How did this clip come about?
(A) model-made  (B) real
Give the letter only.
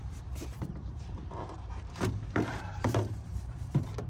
A